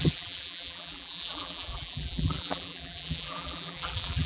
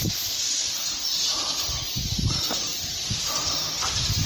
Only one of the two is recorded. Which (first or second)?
second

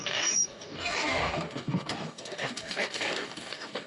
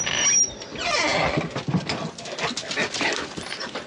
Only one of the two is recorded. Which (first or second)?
second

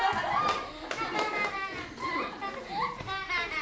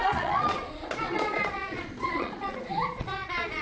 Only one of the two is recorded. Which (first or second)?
first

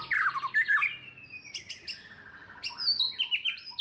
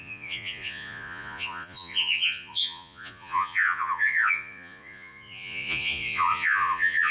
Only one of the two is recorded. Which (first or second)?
first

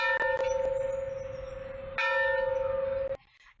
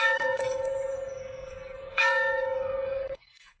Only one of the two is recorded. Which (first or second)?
first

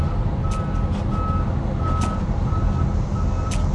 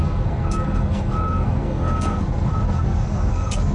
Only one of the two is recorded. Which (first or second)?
first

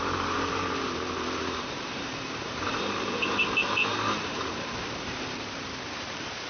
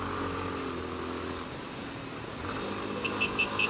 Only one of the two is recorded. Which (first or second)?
second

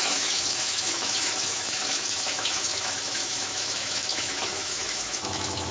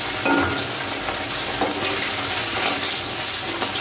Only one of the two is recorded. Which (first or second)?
second